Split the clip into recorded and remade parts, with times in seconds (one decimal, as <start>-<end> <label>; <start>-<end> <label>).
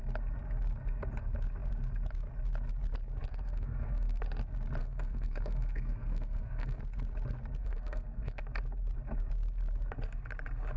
0.0-3.3 recorded; 3.3-4.2 remade; 4.2-4.8 recorded; 4.8-6.8 remade; 6.8-7.6 recorded; 7.6-8.4 remade; 8.4-10.8 recorded